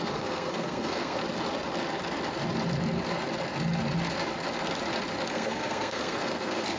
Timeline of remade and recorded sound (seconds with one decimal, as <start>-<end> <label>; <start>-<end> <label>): 0.0-1.2 remade; 1.2-5.3 recorded; 5.3-6.8 remade